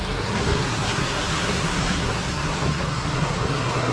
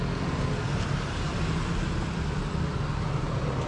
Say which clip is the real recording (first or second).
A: second